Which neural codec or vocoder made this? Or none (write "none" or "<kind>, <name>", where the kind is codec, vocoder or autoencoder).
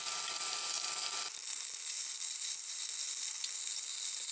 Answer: none